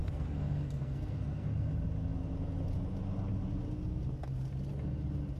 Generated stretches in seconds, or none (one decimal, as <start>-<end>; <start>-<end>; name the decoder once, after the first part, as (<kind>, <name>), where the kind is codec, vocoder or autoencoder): 0.0-1.7 (codec, SNAC)